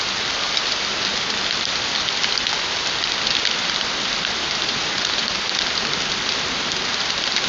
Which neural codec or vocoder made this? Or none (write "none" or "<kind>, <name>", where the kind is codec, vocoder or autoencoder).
none